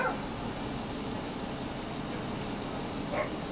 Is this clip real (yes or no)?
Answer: yes